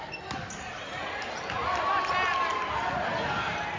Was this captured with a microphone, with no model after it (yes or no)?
yes